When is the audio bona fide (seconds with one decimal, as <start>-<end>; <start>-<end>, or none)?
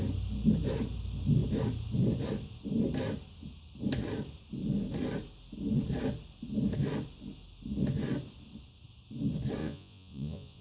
0.0-9.6